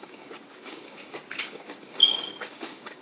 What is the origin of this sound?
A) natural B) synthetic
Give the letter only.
B